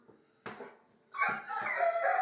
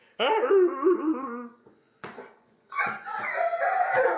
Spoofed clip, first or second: second